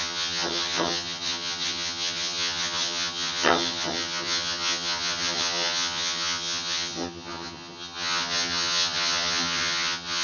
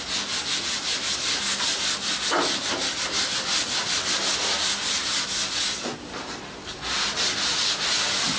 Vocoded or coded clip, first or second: first